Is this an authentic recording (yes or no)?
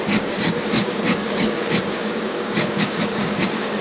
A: no